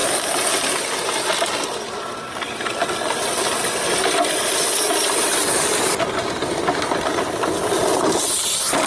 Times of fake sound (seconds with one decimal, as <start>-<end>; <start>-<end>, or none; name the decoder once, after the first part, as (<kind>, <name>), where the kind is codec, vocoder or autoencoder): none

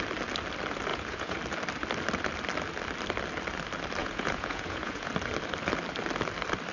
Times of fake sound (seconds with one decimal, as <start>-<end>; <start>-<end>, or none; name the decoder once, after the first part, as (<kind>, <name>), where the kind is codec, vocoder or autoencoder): 0.9-1.4 (vocoder, Vocos); 4.0-5.1

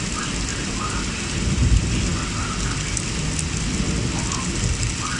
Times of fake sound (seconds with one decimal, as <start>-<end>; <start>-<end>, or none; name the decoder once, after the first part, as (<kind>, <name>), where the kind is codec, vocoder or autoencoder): none